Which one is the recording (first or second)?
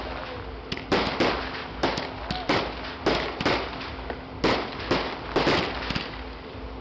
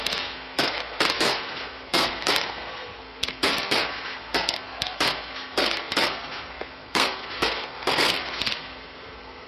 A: first